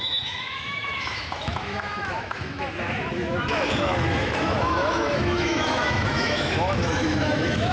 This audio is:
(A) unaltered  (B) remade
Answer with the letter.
B